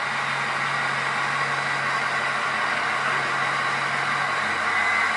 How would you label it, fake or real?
real